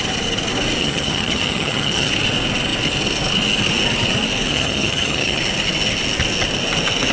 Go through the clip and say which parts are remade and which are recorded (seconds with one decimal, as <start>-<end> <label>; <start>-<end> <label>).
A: 0.0-0.8 recorded; 0.8-2.1 remade; 2.1-4.5 recorded; 4.5-5.4 remade; 5.4-7.1 recorded